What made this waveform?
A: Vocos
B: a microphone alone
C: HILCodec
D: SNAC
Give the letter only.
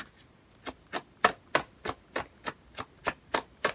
B